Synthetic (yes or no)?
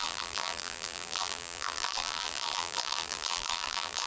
yes